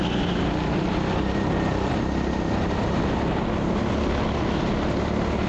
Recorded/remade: recorded